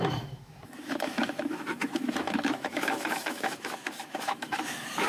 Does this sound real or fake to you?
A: fake